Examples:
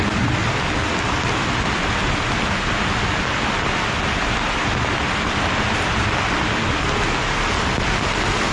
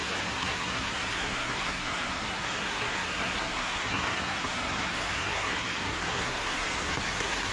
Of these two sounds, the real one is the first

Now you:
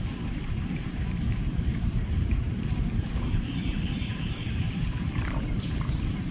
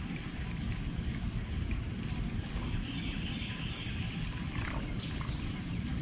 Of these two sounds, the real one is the second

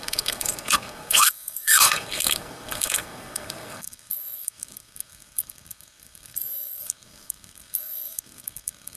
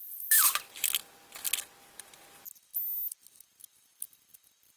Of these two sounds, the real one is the second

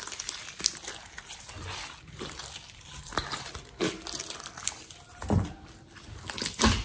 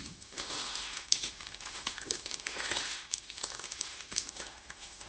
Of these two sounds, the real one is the first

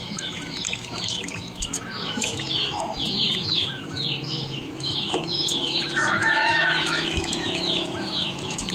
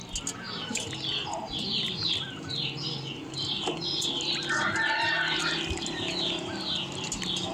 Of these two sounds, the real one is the second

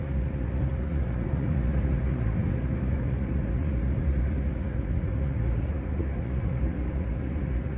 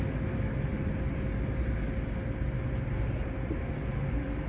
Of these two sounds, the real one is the second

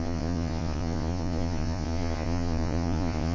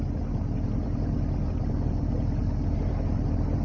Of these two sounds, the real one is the second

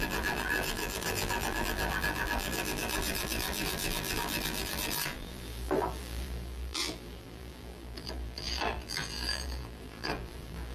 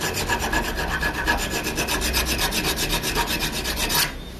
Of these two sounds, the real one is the second